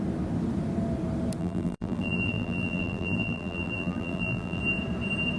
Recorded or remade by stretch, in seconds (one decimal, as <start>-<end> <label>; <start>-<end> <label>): 0.0-1.4 recorded; 1.4-4.6 remade; 4.6-5.4 recorded